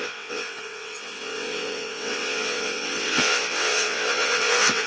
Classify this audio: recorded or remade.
remade